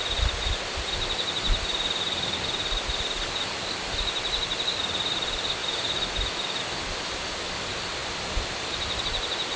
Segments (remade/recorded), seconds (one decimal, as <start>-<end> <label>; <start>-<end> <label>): 0.0-9.6 recorded